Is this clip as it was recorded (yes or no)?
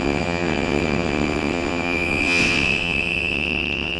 no